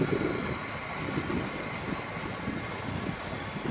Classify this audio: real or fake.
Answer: real